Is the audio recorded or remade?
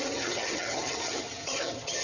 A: remade